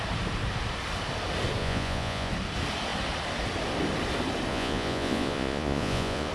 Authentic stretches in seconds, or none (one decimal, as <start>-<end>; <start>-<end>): 0.0-1.6; 2.3-4.5